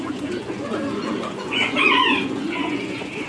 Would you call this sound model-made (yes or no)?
yes